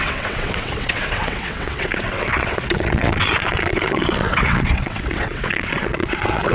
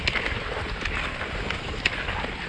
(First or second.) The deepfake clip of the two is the first